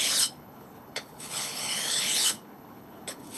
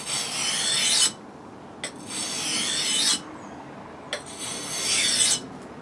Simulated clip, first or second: first